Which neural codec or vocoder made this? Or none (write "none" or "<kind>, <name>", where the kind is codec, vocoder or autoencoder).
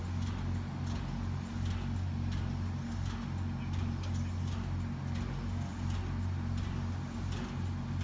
none